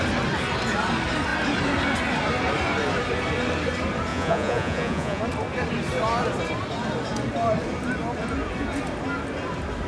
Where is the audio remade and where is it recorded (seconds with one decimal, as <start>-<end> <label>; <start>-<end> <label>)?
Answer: 0.0-4.1 recorded; 4.1-5.2 remade; 5.2-9.9 recorded